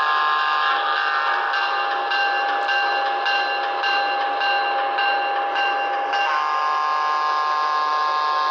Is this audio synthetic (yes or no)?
no